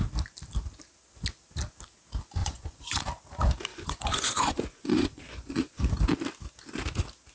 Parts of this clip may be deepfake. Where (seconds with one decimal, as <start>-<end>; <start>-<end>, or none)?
2.4-3.0; 3.7-5.9